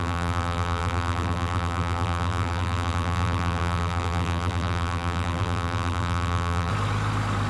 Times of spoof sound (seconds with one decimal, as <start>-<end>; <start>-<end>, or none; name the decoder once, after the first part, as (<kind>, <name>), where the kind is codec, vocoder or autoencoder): 0.0-6.7 (vocoder, BigVGAN v2)